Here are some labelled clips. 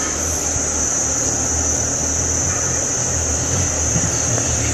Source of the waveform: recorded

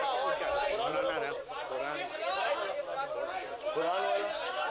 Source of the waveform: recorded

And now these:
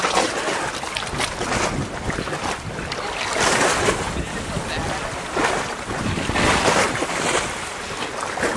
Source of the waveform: recorded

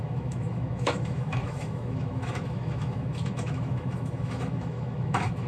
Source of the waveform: remade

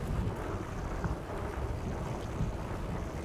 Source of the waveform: recorded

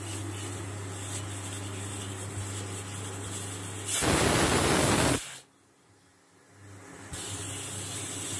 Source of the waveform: recorded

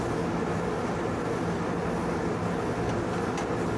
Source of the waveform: recorded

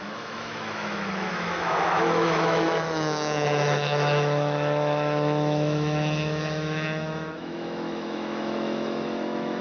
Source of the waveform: remade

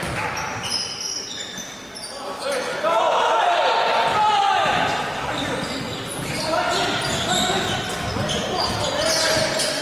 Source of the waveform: recorded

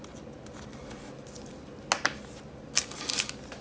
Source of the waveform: recorded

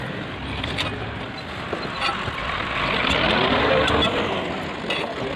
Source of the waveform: recorded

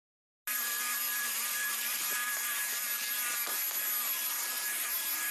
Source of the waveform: recorded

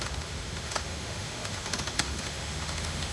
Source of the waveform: remade